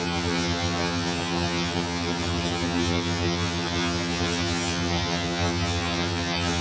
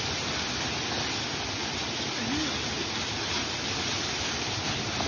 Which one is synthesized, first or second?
first